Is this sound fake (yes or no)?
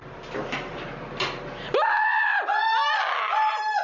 no